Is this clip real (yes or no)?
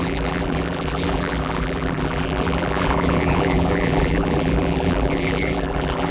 no